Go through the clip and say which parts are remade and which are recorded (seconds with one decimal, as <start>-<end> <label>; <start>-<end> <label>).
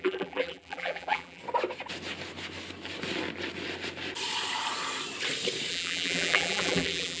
0.0-1.4 remade; 1.4-5.7 recorded; 5.7-7.2 remade